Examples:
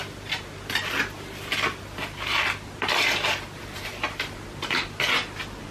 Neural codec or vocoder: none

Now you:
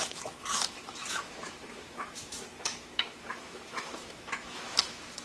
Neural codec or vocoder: autoencoder, DAC-VAE